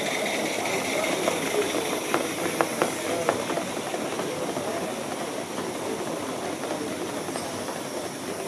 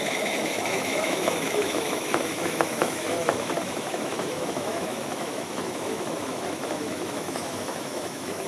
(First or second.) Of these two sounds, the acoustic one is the first